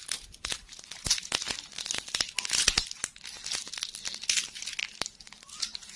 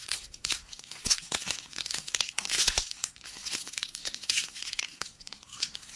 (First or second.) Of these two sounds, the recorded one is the first